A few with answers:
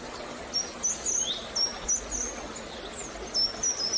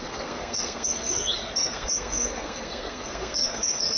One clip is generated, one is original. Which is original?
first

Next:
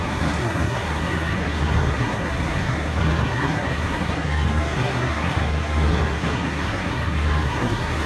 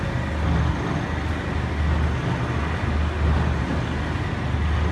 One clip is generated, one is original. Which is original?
second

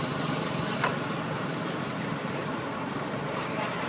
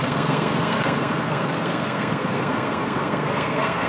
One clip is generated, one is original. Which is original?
first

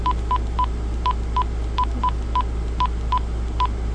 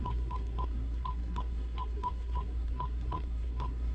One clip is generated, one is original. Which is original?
first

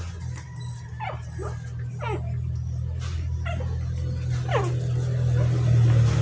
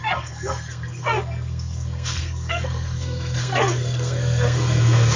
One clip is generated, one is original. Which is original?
first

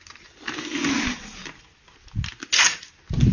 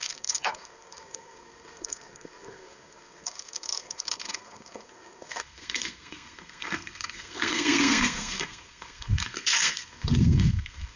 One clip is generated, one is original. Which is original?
first